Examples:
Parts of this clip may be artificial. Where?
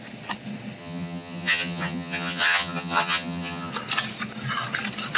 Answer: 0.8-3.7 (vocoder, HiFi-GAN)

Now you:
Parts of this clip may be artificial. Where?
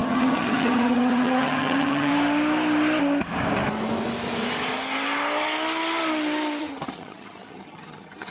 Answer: 0.0-2.1 (vocoder, HiFi-GAN); 6.6-8.3